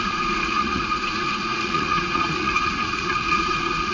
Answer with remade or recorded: remade